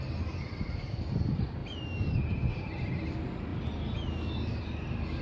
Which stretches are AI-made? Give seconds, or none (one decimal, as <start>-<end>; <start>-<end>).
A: 3.5-5.2